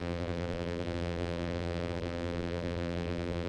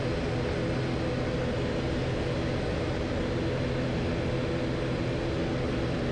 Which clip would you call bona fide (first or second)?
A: second